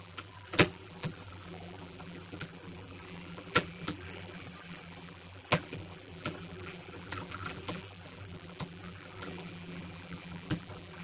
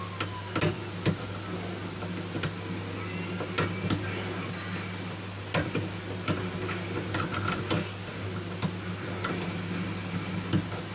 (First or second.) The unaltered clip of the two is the second